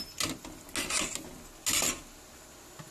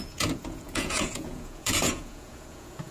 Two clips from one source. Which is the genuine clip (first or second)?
first